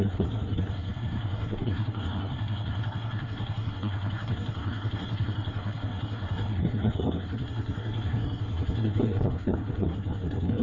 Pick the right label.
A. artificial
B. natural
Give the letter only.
A